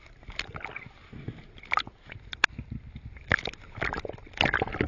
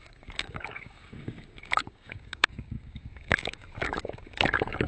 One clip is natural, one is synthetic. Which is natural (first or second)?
first